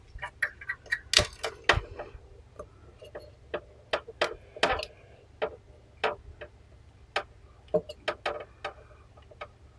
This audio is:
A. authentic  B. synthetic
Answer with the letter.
A